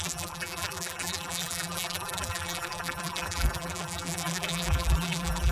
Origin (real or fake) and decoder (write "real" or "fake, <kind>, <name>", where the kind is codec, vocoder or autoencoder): fake, vocoder, BigVGAN v2